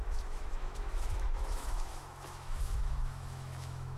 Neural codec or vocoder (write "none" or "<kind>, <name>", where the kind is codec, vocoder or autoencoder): autoencoder, DAC-VAE